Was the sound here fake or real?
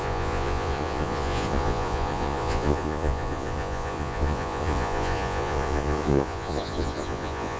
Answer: fake